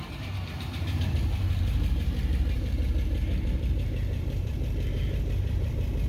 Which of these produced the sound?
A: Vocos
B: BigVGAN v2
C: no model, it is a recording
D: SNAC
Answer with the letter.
B